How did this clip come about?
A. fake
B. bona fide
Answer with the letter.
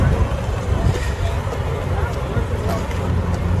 B